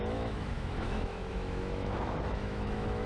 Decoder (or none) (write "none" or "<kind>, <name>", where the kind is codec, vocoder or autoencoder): autoencoder, DAC-VAE